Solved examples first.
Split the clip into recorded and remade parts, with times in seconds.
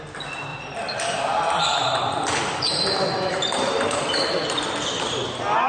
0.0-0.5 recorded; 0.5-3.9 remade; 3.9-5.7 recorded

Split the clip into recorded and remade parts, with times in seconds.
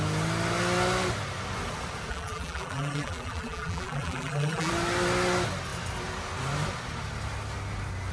0.0-2.1 recorded; 2.1-4.7 remade; 4.7-8.1 recorded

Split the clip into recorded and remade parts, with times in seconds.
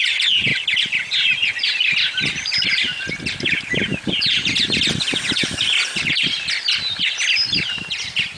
0.0-0.5 remade; 0.5-1.5 recorded; 1.5-8.4 remade